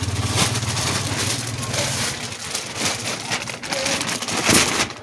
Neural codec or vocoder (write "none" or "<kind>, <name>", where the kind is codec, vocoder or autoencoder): none